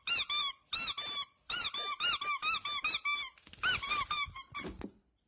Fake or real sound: real